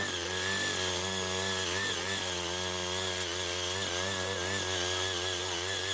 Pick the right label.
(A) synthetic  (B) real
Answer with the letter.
B